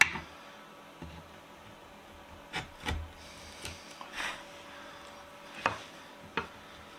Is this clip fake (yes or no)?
no